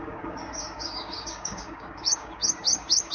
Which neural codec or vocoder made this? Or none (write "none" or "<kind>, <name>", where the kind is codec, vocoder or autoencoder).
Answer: codec, DAC